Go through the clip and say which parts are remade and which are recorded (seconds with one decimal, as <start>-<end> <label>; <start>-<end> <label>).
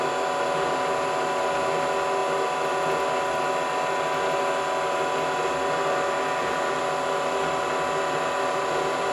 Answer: 0.0-9.1 recorded